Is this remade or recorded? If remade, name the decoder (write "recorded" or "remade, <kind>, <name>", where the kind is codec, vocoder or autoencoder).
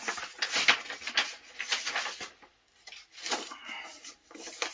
recorded